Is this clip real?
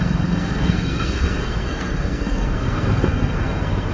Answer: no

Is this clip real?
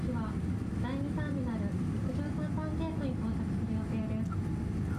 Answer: yes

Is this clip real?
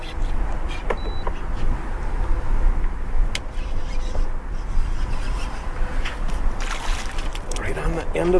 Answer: yes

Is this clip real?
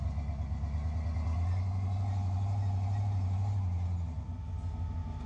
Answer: yes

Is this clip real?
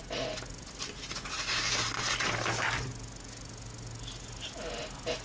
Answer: yes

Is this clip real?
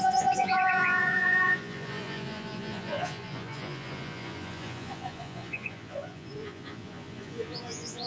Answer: no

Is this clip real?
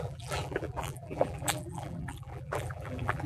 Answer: no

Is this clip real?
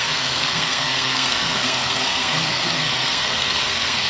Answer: no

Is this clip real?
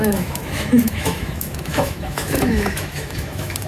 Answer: no